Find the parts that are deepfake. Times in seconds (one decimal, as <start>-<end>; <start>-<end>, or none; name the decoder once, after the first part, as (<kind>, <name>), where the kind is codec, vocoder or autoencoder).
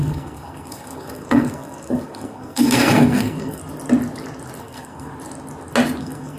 0.0-3.6 (codec, SNAC); 4.6-5.1; 6.0-6.4